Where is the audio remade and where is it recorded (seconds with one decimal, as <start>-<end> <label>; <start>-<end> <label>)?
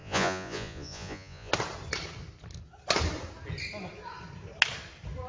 0.0-1.5 remade; 1.5-5.3 recorded